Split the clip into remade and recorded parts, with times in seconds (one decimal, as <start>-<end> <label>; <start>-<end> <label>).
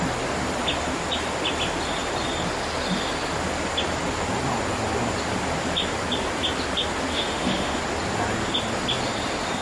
0.0-7.1 recorded; 7.1-7.8 remade; 7.8-9.6 recorded